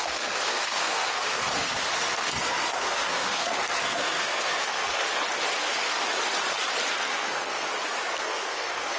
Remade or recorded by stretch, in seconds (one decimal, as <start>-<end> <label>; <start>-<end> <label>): 0.0-5.0 remade; 5.0-5.6 recorded; 5.6-6.0 remade; 6.0-6.9 recorded; 6.9-7.7 remade; 7.7-8.2 recorded; 8.2-9.0 remade